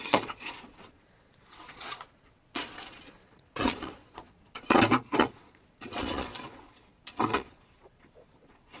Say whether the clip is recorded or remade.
remade